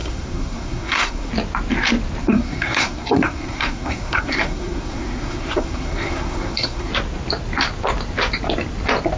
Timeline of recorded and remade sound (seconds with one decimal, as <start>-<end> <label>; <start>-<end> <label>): 0.0-1.3 remade; 1.3-2.2 recorded; 2.2-6.9 remade; 6.9-9.2 recorded